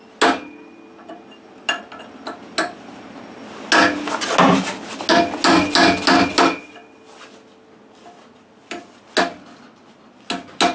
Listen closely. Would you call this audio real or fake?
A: real